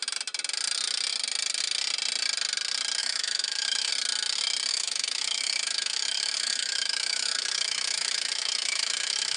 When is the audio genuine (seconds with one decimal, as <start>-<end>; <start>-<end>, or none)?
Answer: 0.0-3.0; 3.9-4.7